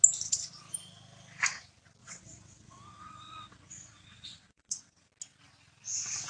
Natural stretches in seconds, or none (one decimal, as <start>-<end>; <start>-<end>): 0.0-2.0; 5.1-6.3